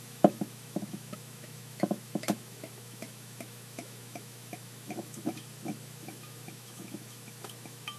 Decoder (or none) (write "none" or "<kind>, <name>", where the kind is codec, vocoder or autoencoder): autoencoder, DAC-VAE